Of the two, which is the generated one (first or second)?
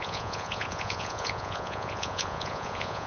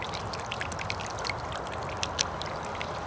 first